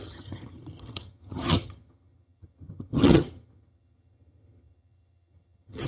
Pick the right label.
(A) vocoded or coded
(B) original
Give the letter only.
A